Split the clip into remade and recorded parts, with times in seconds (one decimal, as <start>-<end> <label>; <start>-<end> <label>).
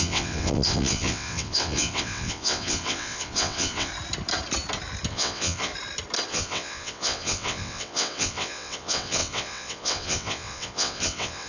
0.0-3.9 remade; 3.9-5.1 recorded; 5.1-5.7 remade; 5.7-6.3 recorded; 6.3-11.5 remade